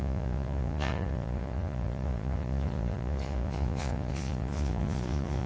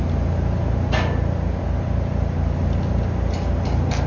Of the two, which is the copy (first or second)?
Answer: first